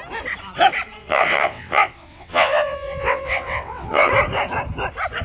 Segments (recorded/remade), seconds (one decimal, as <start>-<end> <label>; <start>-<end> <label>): 0.0-1.0 recorded; 1.0-4.1 remade; 4.1-5.2 recorded